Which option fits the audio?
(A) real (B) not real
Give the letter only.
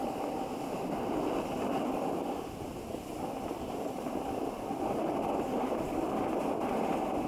A